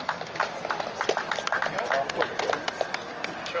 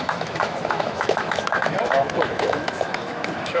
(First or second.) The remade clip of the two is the second